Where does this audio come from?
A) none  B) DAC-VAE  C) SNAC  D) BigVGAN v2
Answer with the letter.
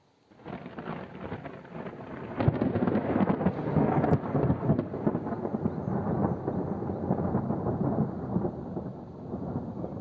A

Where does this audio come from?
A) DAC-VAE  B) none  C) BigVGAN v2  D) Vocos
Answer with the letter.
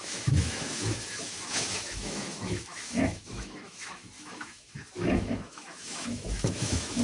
A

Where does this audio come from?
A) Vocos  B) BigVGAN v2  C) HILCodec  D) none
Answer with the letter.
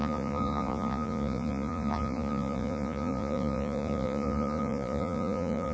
A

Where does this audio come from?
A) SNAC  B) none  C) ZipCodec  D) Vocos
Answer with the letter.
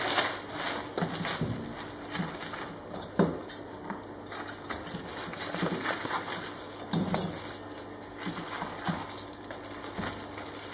B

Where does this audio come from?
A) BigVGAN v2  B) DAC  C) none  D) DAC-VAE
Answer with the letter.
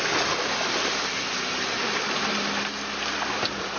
C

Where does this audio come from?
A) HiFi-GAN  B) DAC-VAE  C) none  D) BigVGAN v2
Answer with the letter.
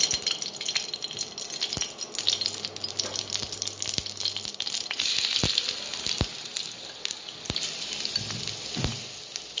C